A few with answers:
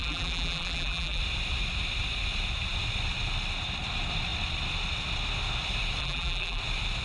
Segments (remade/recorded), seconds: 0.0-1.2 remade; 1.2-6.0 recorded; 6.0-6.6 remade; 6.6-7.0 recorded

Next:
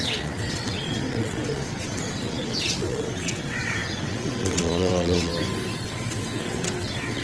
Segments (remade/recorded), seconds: 0.0-5.3 remade; 5.3-5.9 recorded; 5.9-7.2 remade

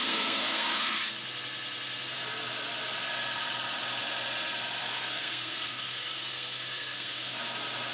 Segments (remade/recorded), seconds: 0.0-1.0 remade; 1.0-4.8 recorded; 4.8-7.4 remade; 7.4-7.9 recorded

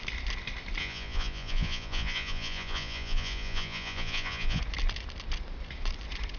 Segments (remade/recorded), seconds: 0.0-0.8 recorded; 0.8-4.6 remade; 4.6-6.4 recorded

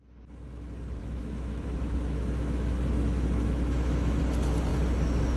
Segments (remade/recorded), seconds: 0.0-1.0 recorded; 1.0-4.2 remade; 4.2-5.4 recorded